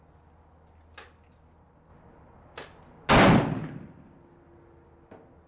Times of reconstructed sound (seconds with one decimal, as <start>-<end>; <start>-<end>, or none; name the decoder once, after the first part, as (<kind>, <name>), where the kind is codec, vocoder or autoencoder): none